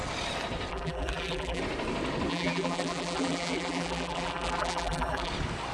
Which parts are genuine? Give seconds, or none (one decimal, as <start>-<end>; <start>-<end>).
0.0-0.7; 1.6-2.3; 5.3-5.7

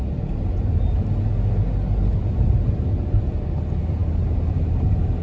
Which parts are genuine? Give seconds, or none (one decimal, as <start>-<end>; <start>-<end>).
0.0-2.1; 3.4-5.2

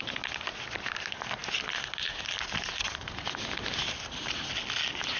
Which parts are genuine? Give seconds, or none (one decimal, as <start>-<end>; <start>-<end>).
0.0-5.2

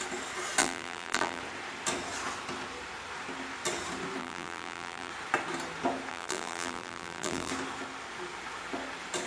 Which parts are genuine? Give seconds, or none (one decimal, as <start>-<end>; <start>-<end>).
0.0-0.6; 1.4-4.2; 5.1-6.1; 7.5-9.3

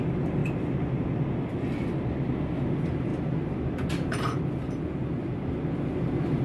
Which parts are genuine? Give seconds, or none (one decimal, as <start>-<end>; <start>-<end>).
0.0-3.1; 4.8-6.4

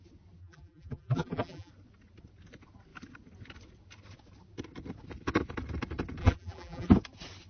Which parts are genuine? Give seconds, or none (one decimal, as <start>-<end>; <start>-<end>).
0.0-0.4; 1.7-6.2; 6.9-7.5